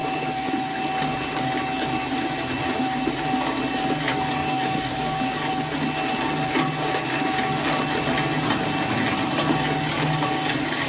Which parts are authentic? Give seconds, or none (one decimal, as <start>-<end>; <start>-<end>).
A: 0.0-4.4; 5.5-10.9